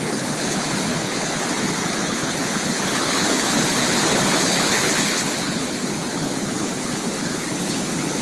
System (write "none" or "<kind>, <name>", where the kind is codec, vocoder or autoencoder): codec, HILCodec